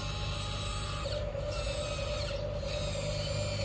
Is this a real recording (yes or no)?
yes